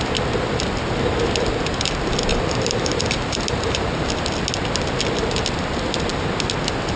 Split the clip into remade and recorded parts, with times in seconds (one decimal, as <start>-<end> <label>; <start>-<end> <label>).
0.0-2.3 recorded; 2.3-4.1 remade; 4.1-7.0 recorded